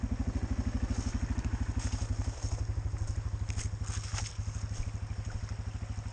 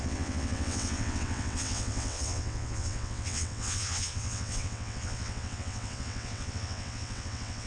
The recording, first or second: first